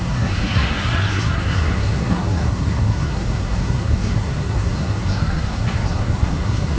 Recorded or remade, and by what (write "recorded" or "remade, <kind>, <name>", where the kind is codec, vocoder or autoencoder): remade, codec, SNAC